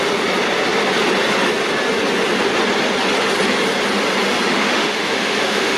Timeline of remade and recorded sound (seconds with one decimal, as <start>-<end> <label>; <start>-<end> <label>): 0.0-4.5 recorded; 4.5-5.8 remade